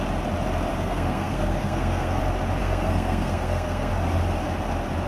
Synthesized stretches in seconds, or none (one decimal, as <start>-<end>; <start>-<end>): 0.7-2.2; 2.6-3.9